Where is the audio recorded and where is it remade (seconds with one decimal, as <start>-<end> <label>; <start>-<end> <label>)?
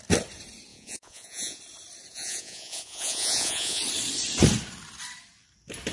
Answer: 0.0-0.7 recorded; 0.7-1.6 remade; 1.6-2.1 recorded; 2.1-3.8 remade; 3.8-5.9 recorded